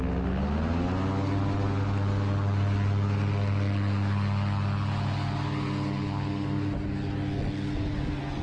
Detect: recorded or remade recorded